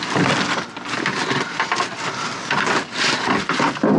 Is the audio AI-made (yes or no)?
no